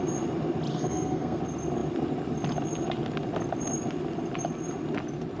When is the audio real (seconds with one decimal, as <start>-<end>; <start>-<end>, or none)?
0.0-0.7; 1.4-5.4